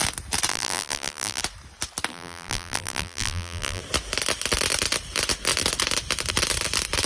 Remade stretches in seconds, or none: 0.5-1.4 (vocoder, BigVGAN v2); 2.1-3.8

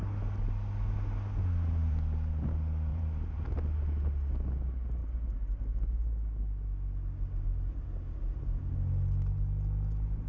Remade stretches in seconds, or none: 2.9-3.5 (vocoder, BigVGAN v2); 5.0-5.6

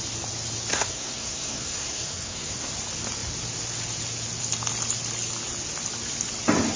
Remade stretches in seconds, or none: 0.7-2.7 (codec, SNAC)

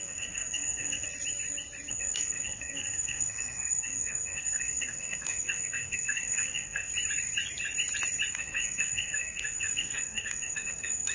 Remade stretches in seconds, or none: 0.0-1.1 (codec, SNAC); 1.9-6.9; 8.3-11.1

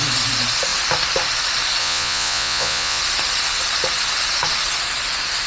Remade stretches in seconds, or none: 1.8-3.0 (vocoder, Vocos)